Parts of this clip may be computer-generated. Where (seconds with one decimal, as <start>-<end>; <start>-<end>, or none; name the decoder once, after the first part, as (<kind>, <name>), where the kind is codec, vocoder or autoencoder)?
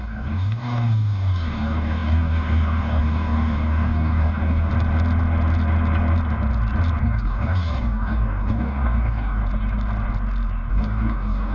0.0-4.7 (codec, DAC); 7.0-9.4; 10.7-11.5